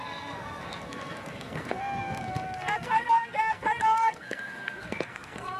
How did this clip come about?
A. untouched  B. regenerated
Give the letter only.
B